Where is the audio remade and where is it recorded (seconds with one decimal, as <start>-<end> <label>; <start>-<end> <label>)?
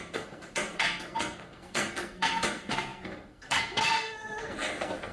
0.0-5.1 remade